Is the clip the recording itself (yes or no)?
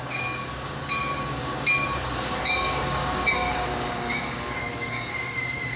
no